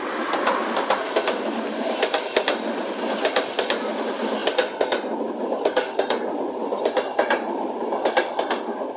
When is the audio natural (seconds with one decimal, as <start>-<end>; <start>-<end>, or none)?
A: 4.4-5.2